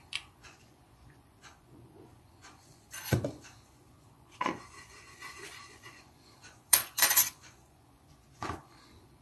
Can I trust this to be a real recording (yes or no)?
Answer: no